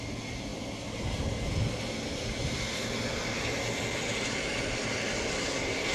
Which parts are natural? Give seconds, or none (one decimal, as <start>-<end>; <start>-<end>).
0.0-5.9